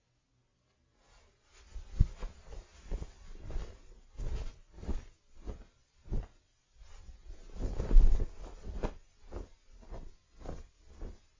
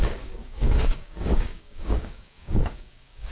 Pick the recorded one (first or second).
first